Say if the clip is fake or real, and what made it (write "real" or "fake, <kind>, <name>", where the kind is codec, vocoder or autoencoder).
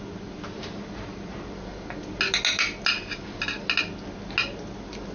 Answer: real